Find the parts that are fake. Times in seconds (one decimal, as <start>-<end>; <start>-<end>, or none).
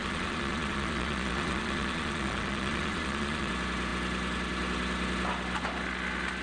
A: 0.0-3.5